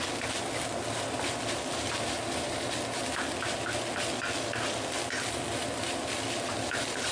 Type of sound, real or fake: real